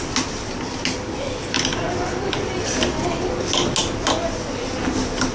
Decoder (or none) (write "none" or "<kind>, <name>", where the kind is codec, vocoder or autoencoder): none